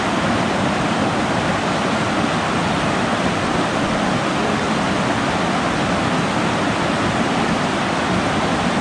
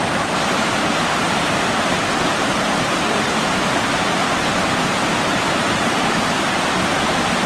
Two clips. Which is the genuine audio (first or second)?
first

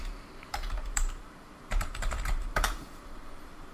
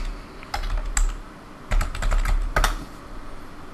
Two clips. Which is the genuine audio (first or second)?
second